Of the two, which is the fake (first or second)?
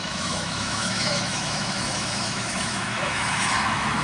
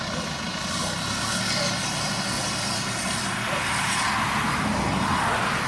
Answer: first